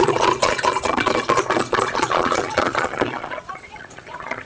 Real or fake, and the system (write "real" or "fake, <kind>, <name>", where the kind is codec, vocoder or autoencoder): fake, vocoder, Vocos